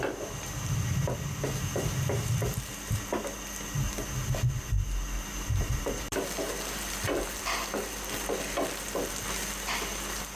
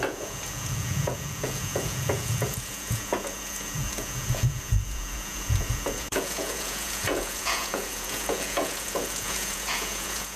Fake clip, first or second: second